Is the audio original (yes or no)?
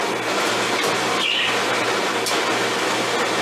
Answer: yes